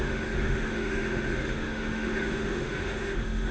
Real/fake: fake